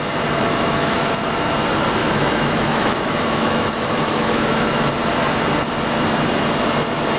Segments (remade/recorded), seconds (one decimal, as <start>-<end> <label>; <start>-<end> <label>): 0.0-0.4 recorded; 0.4-1.1 remade; 1.1-2.0 recorded; 2.0-4.9 remade; 4.9-7.2 recorded